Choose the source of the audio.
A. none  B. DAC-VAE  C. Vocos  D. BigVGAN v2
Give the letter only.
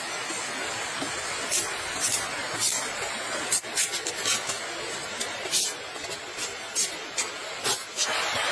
A